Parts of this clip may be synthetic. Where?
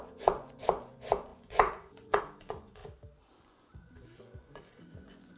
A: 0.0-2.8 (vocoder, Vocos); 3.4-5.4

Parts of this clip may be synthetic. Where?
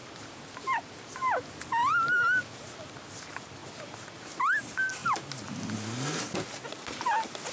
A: none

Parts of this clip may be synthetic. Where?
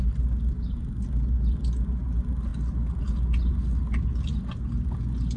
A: none